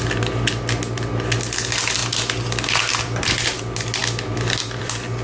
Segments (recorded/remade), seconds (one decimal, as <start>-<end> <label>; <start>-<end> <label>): 0.0-5.2 recorded